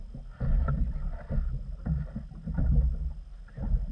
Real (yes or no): yes